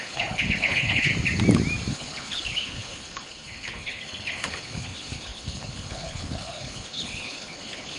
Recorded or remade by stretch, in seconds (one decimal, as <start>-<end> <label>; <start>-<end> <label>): 0.0-1.1 remade; 1.1-1.9 recorded; 1.9-8.0 remade